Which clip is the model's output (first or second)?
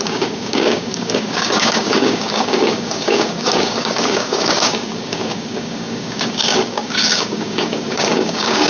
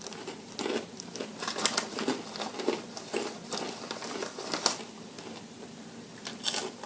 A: first